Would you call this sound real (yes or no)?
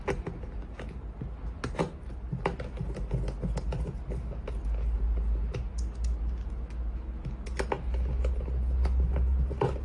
yes